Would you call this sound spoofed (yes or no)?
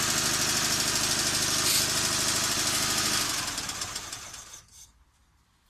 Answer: no